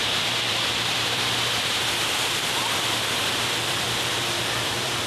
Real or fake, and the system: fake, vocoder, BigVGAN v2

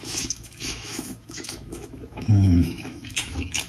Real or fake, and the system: fake, autoencoder, DAC-VAE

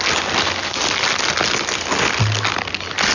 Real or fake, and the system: real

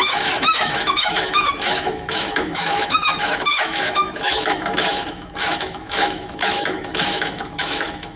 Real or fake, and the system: fake, autoencoder, DAC-VAE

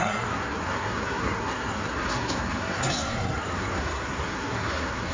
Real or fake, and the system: fake, codec, SNAC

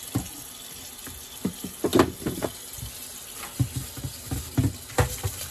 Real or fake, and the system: real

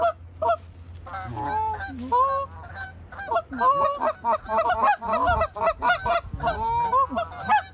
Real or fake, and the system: real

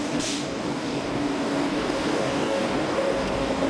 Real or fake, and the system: fake, codec, DAC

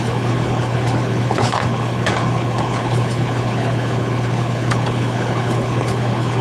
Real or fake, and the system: fake, codec, HILCodec